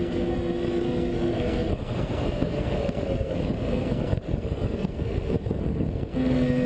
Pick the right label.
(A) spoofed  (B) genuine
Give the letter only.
A